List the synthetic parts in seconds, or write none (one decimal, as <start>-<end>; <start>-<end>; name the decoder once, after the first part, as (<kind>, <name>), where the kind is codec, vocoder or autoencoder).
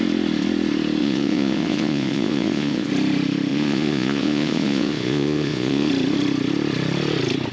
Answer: 1.0-2.9 (vocoder, Vocos); 3.5-5.9